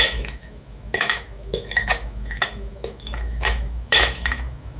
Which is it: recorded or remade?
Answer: remade